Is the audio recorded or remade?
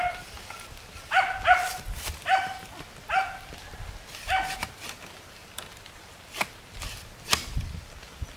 recorded